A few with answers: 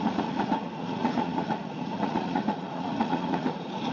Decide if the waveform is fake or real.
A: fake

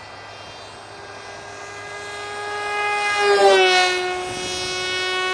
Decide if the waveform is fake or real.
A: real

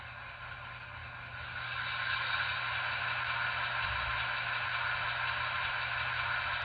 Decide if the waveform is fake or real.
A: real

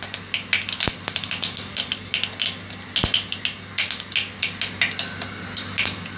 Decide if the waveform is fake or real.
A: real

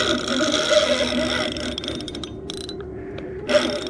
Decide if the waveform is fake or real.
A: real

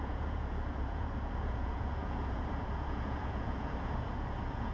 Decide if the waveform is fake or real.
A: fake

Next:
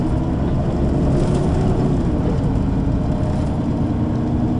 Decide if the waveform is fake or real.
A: real